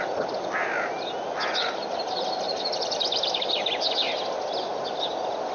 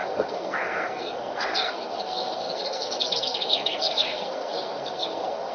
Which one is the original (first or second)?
first